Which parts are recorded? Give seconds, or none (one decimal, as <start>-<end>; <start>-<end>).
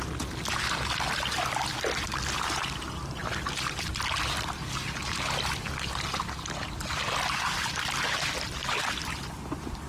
0.0-9.9